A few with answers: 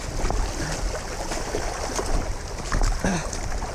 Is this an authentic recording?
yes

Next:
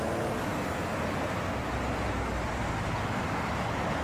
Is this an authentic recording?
yes